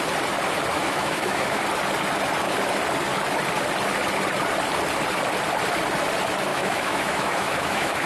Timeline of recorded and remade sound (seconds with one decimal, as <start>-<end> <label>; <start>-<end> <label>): 0.0-0.8 recorded; 0.8-1.6 remade; 1.6-6.5 recorded; 6.5-8.1 remade